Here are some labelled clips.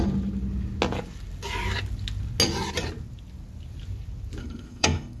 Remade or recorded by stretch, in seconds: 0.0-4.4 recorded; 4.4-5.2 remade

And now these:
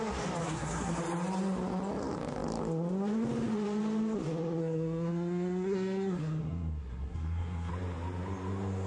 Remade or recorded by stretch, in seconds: 0.0-0.4 recorded; 0.4-1.0 remade; 1.0-4.6 recorded; 4.6-7.7 remade; 7.7-8.9 recorded